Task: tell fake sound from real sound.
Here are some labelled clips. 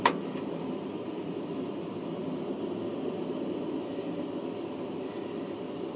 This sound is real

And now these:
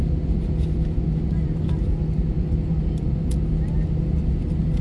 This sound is real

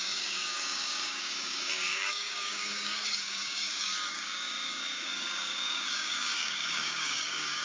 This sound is fake